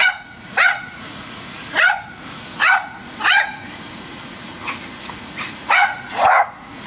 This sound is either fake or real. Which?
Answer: fake